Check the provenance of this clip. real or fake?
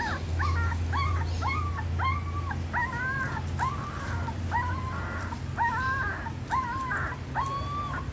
real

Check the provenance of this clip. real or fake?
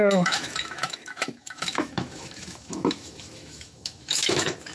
fake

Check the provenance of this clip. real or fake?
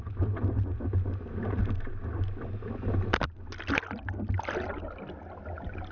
real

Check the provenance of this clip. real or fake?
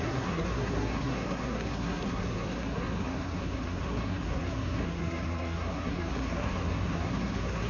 fake